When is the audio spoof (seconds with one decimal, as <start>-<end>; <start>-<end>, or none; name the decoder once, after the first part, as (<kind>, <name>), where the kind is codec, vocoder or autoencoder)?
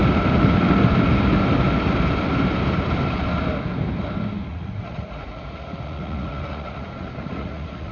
4.5-7.9 (vocoder, Vocos)